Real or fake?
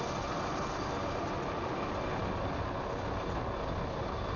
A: real